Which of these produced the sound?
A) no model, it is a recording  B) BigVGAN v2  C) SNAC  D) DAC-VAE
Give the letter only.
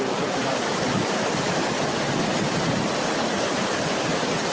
A